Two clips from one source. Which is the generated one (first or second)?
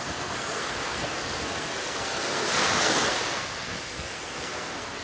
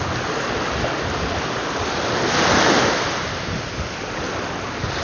first